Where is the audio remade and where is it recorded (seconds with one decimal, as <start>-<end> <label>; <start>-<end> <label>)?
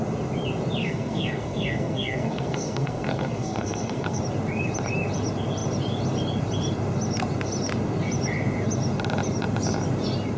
0.0-0.8 recorded; 0.8-4.2 remade; 4.2-10.4 recorded